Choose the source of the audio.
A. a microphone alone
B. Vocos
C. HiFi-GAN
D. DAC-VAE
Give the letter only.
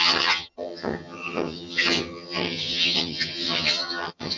C